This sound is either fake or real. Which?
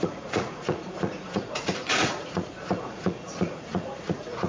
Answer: fake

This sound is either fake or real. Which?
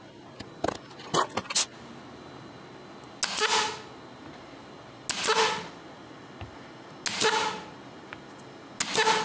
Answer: real